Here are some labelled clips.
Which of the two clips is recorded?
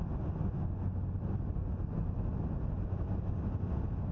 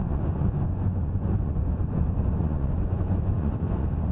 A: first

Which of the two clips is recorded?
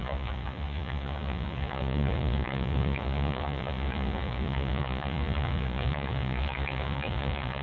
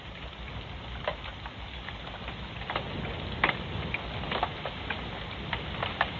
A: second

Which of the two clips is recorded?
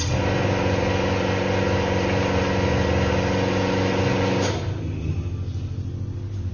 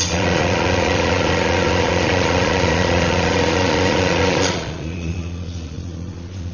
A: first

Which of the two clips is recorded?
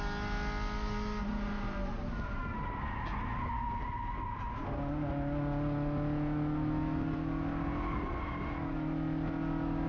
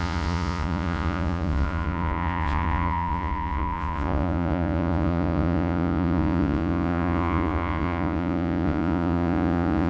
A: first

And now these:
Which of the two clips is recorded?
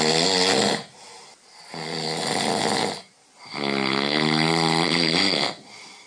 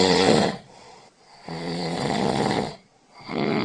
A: first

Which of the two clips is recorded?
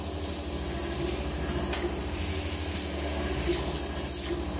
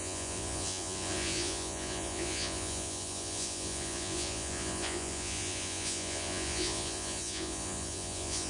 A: first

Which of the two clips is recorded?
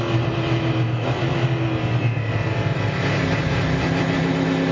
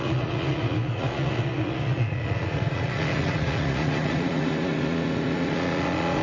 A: first